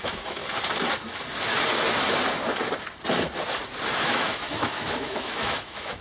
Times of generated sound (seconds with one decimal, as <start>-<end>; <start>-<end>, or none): 0.0-0.4; 4.0-6.0